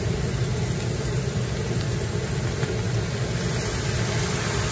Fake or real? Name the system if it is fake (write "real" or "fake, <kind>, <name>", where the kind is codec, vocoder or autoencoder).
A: real